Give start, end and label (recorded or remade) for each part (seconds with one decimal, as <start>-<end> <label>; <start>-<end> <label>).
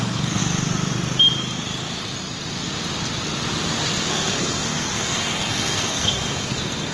0.0-0.4 remade; 0.4-4.1 recorded; 4.1-6.9 remade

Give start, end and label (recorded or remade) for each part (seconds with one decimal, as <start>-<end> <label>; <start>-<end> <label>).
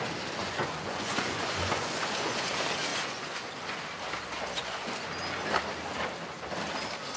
0.0-0.4 recorded; 0.4-2.5 remade; 2.5-2.9 recorded; 2.9-3.8 remade; 3.8-4.6 recorded; 4.6-5.1 remade; 5.1-7.2 recorded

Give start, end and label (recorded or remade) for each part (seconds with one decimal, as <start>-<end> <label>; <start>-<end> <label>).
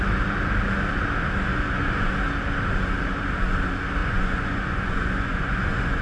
0.0-1.5 recorded; 1.5-2.1 remade; 2.1-4.0 recorded; 4.0-6.0 remade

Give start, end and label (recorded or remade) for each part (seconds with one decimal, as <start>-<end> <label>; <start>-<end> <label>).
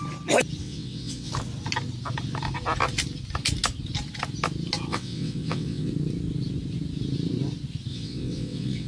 0.0-0.6 recorded; 0.6-1.3 remade; 1.3-4.9 recorded; 4.9-5.9 remade; 5.9-7.9 recorded; 7.9-8.9 remade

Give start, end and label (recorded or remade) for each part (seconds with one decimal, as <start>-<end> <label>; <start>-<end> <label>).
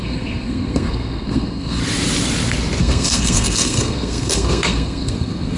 0.0-1.8 remade; 1.8-2.8 recorded; 2.8-5.6 remade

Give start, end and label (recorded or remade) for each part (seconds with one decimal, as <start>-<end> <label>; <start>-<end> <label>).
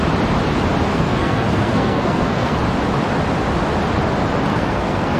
0.0-0.9 recorded; 0.9-2.6 remade; 2.6-4.5 recorded; 4.5-5.2 remade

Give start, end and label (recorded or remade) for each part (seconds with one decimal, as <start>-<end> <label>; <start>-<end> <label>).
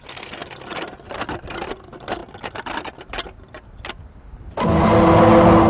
0.0-2.2 remade; 2.2-5.7 recorded